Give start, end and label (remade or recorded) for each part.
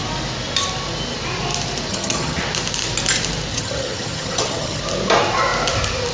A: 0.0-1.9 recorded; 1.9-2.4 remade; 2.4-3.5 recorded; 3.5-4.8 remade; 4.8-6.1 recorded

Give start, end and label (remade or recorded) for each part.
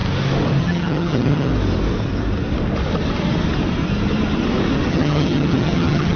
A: 0.0-0.6 recorded; 0.6-1.5 remade; 1.5-4.9 recorded; 4.9-6.2 remade